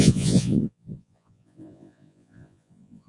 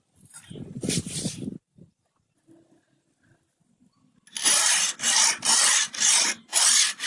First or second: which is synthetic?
first